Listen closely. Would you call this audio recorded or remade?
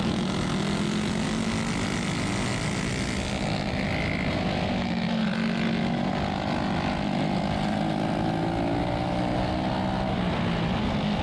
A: recorded